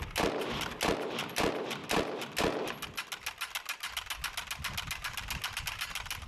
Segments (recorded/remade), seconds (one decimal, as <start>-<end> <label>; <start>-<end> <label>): 0.0-6.3 recorded